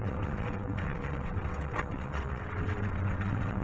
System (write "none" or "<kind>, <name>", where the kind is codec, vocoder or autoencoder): vocoder, WaveNeXt